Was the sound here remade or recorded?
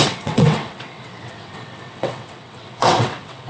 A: remade